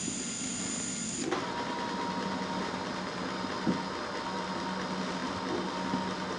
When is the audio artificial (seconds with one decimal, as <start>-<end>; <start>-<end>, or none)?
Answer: none

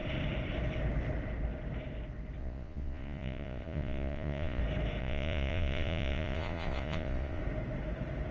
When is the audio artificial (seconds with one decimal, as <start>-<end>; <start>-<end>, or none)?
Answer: 2.4-4.6; 5.0-7.4

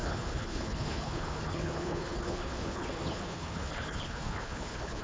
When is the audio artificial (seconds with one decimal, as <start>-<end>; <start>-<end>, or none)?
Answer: 0.0-5.0

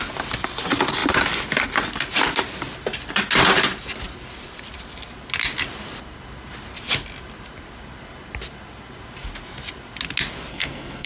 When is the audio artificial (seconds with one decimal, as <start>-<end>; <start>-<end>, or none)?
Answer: 10.5-11.1

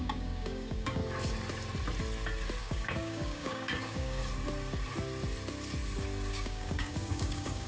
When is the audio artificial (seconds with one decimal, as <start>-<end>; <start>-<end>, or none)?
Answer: 0.0-1.0; 2.6-4.2; 6.3-7.7

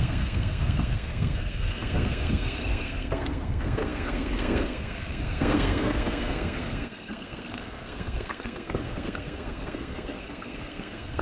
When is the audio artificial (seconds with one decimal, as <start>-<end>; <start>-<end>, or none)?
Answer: 0.0-11.2

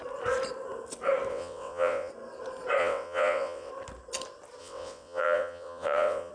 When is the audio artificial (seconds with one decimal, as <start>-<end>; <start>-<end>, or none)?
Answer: 1.3-2.1; 2.8-3.7; 4.6-6.3